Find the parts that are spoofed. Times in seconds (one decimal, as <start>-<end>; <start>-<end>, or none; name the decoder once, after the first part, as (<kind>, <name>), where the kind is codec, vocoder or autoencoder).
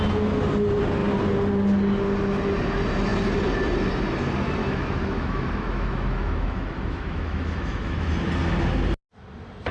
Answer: 4.6-8.1 (autoencoder, DAC-VAE)